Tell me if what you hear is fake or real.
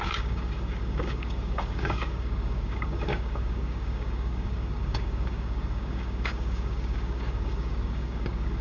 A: fake